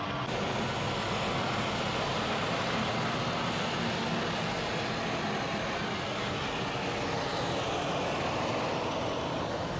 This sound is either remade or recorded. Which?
recorded